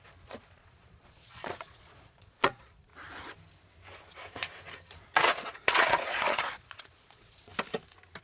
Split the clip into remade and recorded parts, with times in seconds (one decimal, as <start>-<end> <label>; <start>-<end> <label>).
0.0-2.9 remade; 2.9-5.0 recorded; 5.0-7.5 remade; 7.5-8.2 recorded